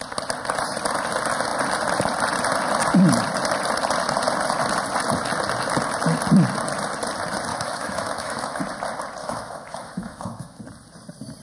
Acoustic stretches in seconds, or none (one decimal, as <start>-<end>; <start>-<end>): 0.0-7.5; 8.6-9.2; 10.6-11.4